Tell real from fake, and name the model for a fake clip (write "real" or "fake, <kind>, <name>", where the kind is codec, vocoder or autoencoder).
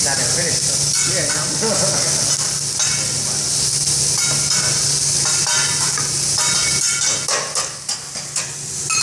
real